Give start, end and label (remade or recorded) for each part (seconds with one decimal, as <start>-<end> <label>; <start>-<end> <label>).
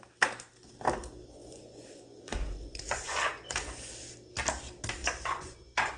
0.0-1.4 recorded; 1.4-3.9 remade; 3.9-5.0 recorded; 5.0-6.0 remade